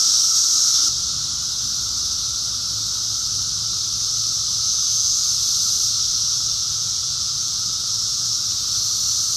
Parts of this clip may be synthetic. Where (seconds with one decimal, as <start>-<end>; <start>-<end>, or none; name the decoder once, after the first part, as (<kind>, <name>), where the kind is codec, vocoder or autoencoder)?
4.5-5.3 (vocoder, Vocos); 6.1-8.3